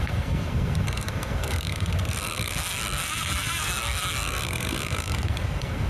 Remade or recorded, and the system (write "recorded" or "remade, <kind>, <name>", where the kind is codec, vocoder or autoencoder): remade, codec, SNAC